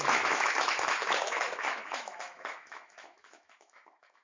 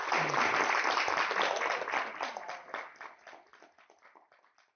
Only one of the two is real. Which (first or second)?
second